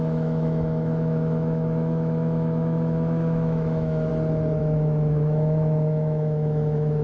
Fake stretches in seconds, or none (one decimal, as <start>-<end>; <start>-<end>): 0.0-4.1; 4.6-7.0